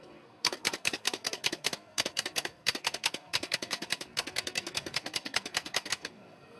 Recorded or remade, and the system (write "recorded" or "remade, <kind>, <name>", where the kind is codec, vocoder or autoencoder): remade, codec, SNAC